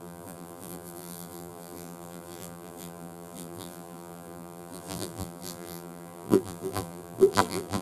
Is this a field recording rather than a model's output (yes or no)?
no